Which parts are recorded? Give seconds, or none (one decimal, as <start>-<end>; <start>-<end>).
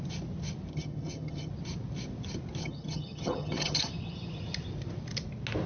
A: 0.0-0.7; 1.5-2.6; 3.9-5.7